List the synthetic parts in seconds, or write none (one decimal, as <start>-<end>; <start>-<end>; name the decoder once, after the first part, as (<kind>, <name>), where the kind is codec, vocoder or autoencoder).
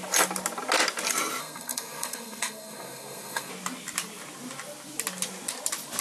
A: 1.4-3.5 (codec, SNAC)